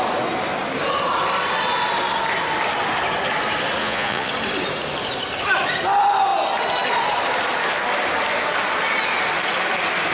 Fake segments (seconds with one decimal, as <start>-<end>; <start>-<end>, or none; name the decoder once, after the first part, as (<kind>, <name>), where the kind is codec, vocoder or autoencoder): 3.8-4.3 (vocoder, Vocos)